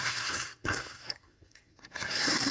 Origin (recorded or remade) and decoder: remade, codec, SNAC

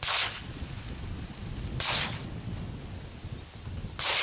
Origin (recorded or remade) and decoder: recorded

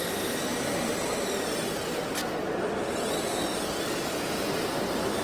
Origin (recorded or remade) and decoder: recorded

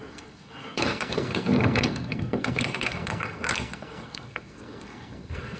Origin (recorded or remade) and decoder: remade, codec, SNAC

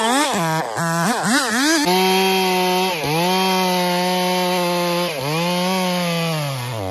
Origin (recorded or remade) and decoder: recorded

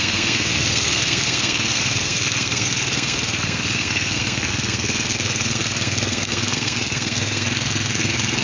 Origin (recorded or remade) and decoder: remade, codec, SNAC